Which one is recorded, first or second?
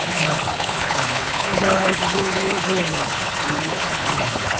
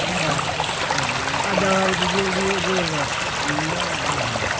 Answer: second